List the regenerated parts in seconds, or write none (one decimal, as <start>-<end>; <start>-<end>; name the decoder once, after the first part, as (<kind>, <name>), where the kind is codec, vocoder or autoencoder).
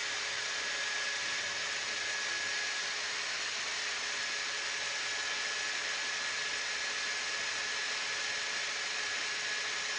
none